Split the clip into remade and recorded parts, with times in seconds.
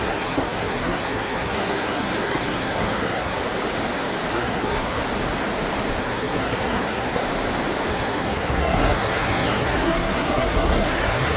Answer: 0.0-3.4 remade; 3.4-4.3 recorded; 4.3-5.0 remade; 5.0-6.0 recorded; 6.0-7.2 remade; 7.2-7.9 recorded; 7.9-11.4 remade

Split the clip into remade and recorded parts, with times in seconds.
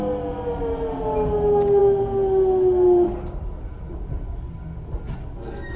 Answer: 0.0-5.8 recorded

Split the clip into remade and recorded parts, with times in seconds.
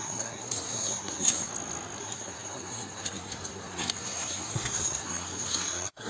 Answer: 0.0-1.5 remade; 1.5-2.0 recorded; 2.0-6.1 remade